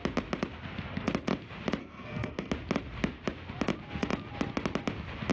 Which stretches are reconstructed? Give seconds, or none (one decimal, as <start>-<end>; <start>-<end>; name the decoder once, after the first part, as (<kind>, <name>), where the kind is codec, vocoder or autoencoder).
1.8-2.5 (codec, SNAC)